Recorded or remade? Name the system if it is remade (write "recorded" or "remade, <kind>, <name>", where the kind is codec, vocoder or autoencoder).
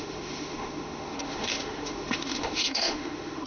remade, autoencoder, DAC-VAE